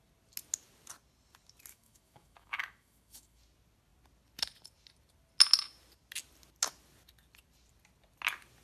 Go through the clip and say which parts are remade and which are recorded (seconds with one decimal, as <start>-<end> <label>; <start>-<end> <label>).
0.0-1.7 recorded; 1.7-3.4 remade; 3.4-8.6 recorded